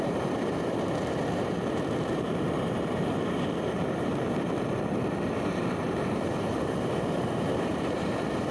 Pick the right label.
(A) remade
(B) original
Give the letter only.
A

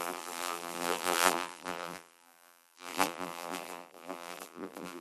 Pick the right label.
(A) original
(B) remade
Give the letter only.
B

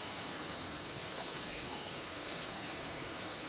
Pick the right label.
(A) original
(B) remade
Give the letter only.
B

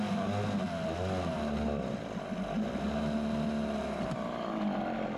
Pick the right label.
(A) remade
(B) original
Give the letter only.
B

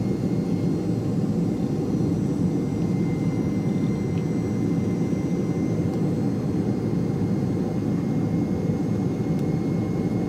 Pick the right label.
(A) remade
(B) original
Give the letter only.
B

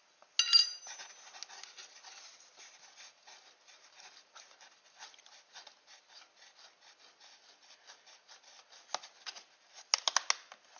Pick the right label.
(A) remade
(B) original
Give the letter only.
B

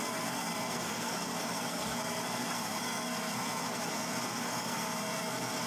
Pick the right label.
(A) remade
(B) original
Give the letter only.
A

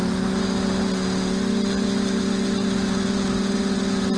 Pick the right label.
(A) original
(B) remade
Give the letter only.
A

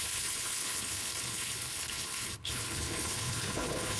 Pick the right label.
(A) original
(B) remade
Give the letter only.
B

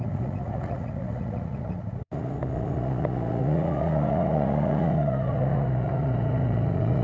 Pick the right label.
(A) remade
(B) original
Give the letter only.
A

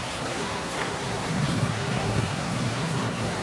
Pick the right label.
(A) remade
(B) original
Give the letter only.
A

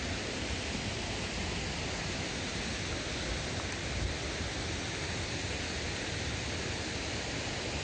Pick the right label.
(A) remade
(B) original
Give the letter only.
B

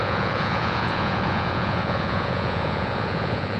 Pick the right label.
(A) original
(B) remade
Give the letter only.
B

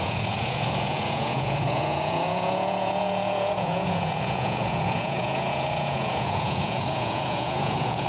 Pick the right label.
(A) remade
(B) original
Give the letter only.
A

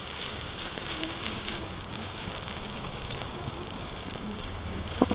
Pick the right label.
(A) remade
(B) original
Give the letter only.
A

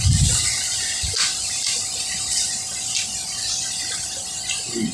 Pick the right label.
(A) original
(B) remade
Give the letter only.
A